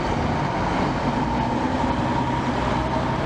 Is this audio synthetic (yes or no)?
no